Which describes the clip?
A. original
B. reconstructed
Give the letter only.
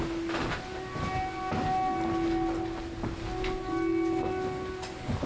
A